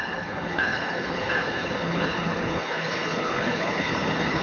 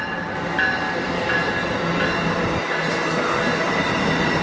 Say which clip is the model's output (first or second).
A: first